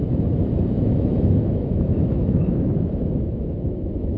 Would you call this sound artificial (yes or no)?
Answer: yes